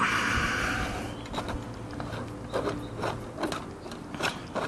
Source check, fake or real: real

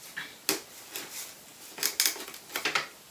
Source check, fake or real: real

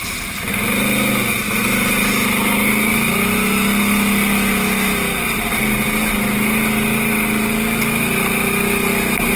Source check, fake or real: real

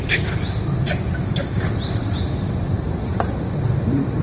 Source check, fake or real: fake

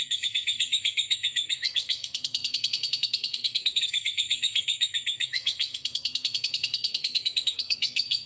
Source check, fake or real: fake